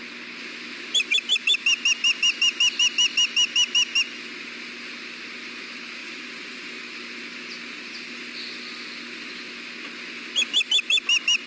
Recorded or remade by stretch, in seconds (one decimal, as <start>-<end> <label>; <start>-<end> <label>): 0.0-6.0 recorded; 6.0-6.8 remade; 6.8-11.5 recorded